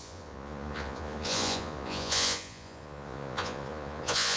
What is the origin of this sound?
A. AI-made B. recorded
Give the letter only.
A